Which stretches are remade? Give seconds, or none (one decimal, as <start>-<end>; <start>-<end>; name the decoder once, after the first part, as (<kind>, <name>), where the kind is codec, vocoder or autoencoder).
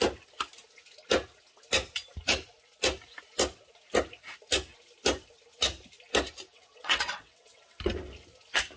6.5-7.8 (vocoder, WaveNeXt)